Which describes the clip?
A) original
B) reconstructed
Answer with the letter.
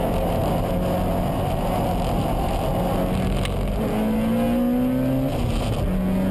A